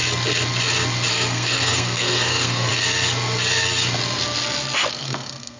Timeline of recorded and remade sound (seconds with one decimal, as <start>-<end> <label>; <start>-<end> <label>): 0.0-1.1 recorded; 1.1-2.7 remade; 2.7-4.9 recorded; 4.9-5.6 remade